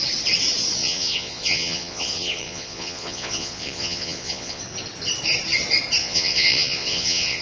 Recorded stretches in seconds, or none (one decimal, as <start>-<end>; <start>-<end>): 0.0-0.8; 4.6-6.0